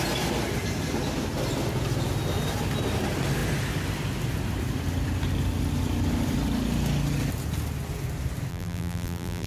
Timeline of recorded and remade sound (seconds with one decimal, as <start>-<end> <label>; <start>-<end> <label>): 0.0-8.5 recorded; 8.5-9.5 remade